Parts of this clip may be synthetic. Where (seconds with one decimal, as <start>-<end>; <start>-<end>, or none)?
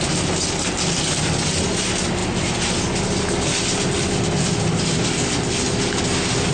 none